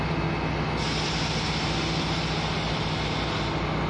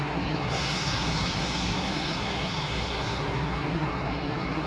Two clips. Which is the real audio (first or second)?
first